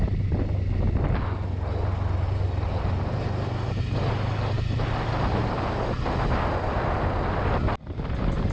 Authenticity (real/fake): real